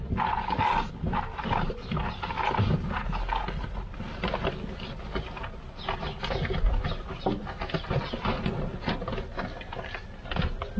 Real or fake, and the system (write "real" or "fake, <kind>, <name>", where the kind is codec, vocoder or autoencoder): real